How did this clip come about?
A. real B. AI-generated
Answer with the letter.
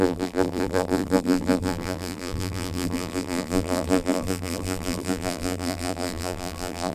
B